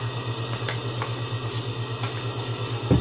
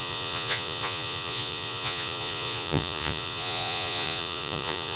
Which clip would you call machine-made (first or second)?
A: second